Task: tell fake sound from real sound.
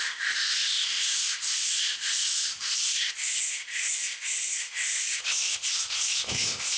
fake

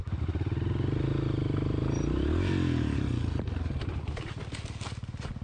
real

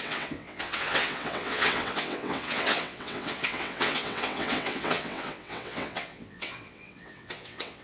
fake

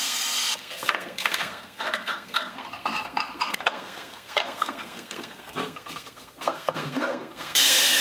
fake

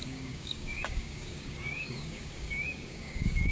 fake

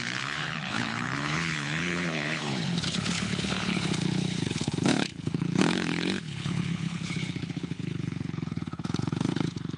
fake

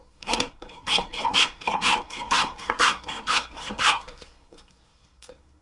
fake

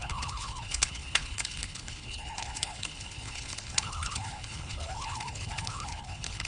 fake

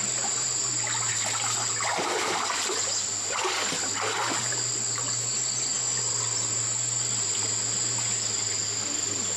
real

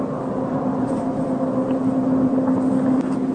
fake